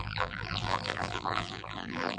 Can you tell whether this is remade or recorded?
remade